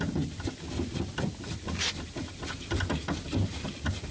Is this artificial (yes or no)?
no